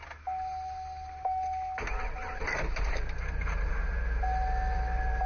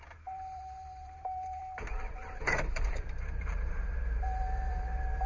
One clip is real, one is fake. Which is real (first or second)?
first